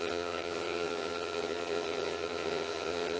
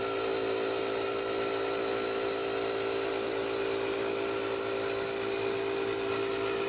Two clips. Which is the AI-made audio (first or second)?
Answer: first